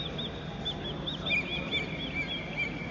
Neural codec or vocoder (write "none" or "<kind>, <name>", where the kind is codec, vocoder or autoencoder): none